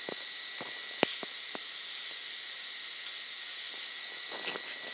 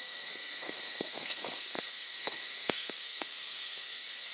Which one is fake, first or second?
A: second